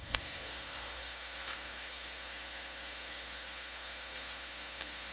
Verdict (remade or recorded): remade